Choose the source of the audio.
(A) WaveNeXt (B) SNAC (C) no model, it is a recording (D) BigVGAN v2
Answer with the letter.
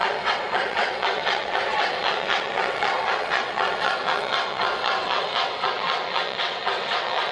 A